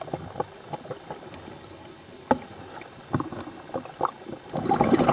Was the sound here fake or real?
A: real